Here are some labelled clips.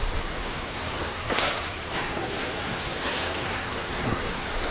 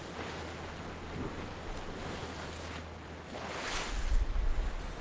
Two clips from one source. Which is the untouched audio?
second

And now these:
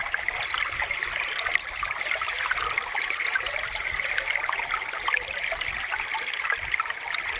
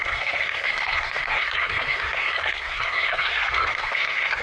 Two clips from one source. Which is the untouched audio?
first